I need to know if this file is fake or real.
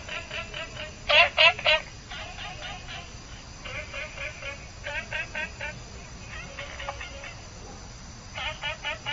real